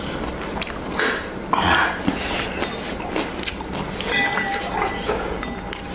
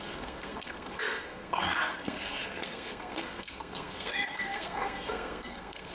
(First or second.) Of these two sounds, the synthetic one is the second